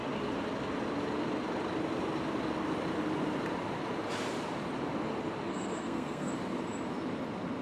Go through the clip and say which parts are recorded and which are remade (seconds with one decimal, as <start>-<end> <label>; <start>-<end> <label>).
0.0-5.5 recorded; 5.5-6.3 remade; 6.3-7.6 recorded